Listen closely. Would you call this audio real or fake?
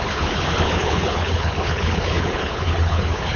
fake